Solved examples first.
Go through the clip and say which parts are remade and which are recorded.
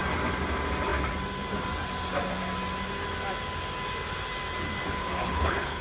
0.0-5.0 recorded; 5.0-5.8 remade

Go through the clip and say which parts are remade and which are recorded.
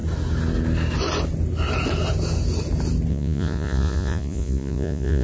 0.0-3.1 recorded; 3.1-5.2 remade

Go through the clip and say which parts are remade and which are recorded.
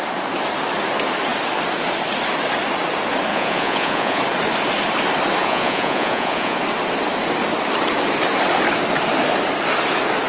0.0-3.3 recorded; 3.3-4.2 remade; 4.2-5.4 recorded; 5.4-6.6 remade; 6.6-10.3 recorded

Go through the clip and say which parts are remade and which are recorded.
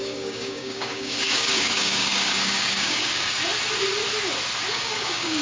0.0-3.4 remade; 3.4-4.7 recorded; 4.7-5.4 remade